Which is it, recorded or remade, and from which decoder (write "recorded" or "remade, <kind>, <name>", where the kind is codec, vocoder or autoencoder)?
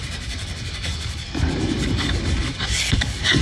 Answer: remade, codec, DAC